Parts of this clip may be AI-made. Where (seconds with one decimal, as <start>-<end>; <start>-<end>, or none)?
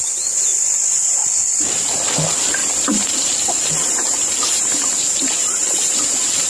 2.6-6.5